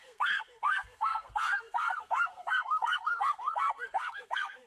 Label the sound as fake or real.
fake